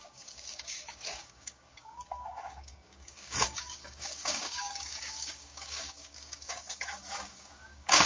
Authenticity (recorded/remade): remade